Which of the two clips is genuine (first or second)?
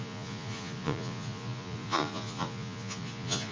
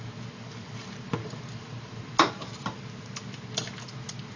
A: second